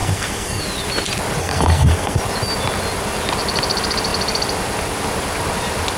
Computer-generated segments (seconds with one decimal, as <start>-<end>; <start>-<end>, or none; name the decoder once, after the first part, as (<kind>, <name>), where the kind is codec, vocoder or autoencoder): 0.0-0.6 (codec, SNAC); 1.4-2.2

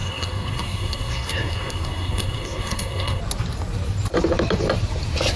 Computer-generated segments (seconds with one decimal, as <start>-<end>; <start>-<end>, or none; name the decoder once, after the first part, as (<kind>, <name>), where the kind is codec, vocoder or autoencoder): 0.0-3.2 (codec, SNAC)

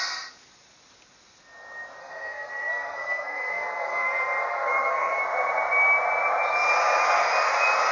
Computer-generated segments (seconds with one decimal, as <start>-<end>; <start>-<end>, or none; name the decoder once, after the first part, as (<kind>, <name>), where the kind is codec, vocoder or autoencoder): 2.0-5.2 (codec, SNAC)

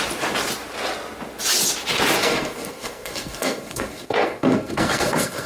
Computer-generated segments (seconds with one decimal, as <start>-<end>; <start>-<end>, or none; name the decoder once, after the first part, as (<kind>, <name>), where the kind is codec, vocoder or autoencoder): 2.2-5.5 (codec, SNAC)

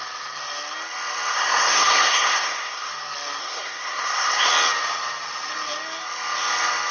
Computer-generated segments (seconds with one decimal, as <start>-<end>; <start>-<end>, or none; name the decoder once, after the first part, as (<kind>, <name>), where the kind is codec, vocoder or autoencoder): 1.3-2.9 (codec, SNAC); 3.4-4.5

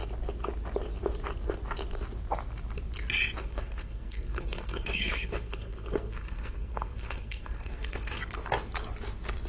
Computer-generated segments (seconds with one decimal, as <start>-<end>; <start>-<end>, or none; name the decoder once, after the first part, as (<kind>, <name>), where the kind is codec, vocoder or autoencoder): 3.4-8.2 (codec, SNAC)